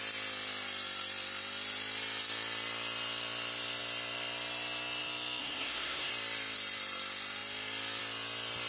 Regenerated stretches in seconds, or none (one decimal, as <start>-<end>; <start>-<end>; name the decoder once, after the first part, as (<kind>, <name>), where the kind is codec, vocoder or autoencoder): 5.4-6.1 (codec, SNAC)